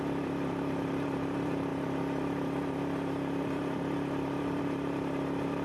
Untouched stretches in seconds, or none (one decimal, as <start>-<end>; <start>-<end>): none